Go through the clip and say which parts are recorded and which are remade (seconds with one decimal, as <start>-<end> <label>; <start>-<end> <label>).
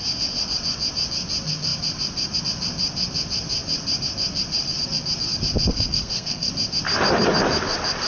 0.0-5.7 recorded; 5.7-6.5 remade; 6.5-8.1 recorded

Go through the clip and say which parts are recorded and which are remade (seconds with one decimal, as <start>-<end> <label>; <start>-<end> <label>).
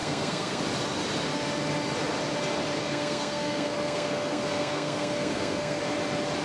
0.0-0.6 remade; 0.6-2.8 recorded; 2.8-5.8 remade; 5.8-6.4 recorded